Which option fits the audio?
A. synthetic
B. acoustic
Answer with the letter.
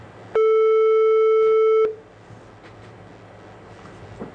B